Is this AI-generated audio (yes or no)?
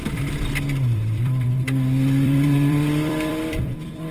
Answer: yes